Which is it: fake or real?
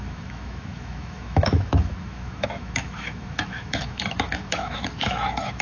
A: fake